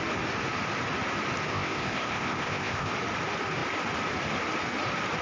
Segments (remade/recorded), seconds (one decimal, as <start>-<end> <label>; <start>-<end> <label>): 0.0-1.5 recorded; 1.5-2.9 remade; 2.9-5.2 recorded